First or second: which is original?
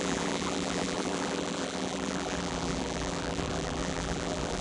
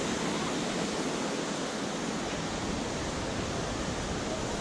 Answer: second